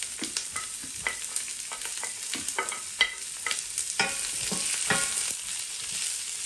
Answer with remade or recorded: recorded